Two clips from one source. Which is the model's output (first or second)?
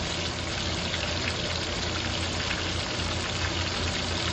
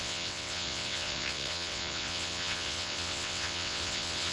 second